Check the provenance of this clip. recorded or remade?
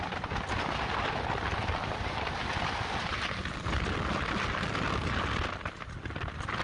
remade